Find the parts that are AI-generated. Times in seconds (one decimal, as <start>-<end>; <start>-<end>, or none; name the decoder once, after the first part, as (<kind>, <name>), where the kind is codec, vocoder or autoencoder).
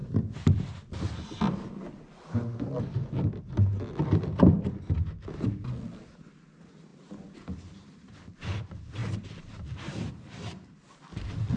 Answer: 6.9-8.1 (vocoder, BigVGAN v2); 9.0-10.1